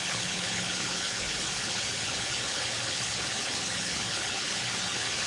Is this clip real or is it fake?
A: fake